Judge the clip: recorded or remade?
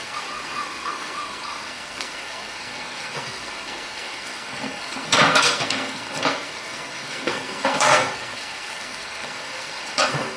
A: remade